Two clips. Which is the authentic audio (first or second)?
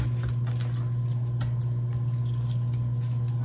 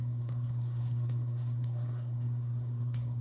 first